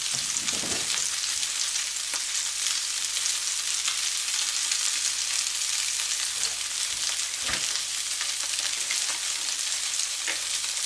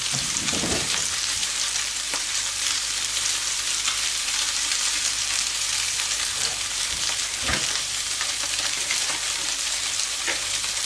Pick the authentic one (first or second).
first